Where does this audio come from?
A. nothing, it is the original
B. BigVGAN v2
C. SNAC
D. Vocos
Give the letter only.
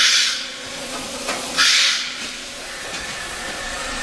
D